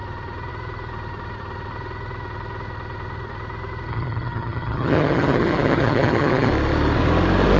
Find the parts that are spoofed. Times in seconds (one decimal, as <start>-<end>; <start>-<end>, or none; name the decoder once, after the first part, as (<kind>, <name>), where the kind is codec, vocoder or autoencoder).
3.9-6.5 (vocoder, HiFi-GAN)